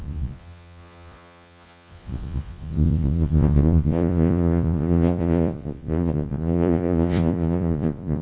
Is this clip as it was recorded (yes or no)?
no